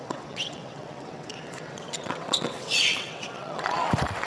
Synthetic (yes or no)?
yes